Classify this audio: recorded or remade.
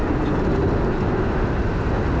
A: recorded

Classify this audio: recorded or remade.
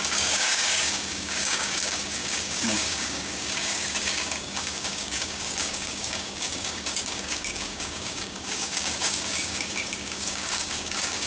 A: remade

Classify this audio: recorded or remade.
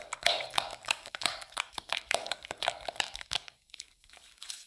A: remade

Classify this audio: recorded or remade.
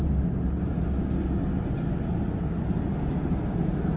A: recorded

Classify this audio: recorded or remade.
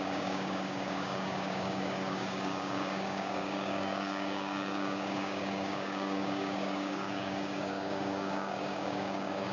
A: remade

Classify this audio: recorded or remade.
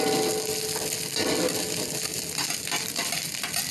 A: recorded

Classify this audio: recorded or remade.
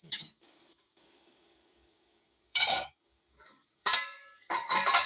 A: remade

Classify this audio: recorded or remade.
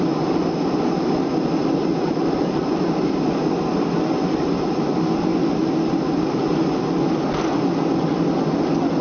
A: recorded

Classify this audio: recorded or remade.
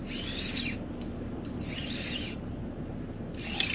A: recorded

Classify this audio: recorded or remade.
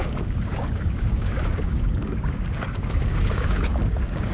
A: remade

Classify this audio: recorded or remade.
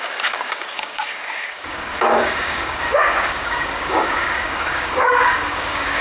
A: remade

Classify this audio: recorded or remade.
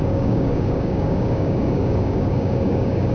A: remade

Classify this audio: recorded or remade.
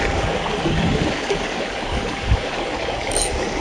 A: remade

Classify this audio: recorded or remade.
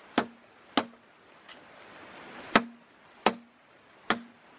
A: recorded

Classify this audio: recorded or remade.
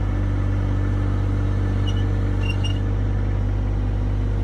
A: recorded